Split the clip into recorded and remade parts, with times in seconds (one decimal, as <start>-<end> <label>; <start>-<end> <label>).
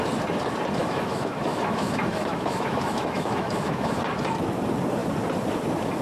0.0-0.8 recorded; 0.8-4.0 remade; 4.0-6.0 recorded